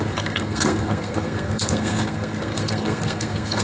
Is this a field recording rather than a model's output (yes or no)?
no